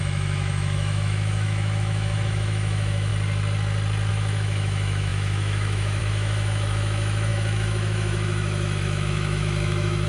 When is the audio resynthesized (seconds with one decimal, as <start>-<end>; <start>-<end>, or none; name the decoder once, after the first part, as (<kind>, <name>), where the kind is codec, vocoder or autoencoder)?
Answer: 0.0-3.1 (autoencoder, DAC-VAE); 4.1-10.1